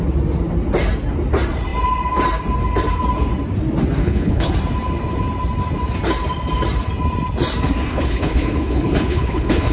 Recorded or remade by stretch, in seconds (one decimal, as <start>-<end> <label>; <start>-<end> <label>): 0.0-4.0 recorded; 4.0-4.5 remade; 4.5-7.9 recorded; 7.9-9.7 remade